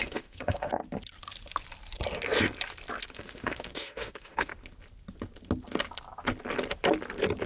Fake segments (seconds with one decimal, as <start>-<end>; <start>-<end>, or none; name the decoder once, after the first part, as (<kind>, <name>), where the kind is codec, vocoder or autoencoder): 0.0-0.8 (autoencoder, DAC-VAE); 3.1-4.5